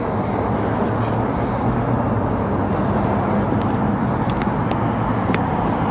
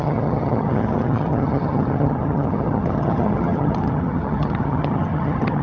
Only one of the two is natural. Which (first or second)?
first